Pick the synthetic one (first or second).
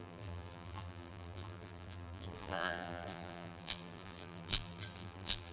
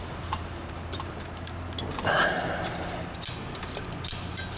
first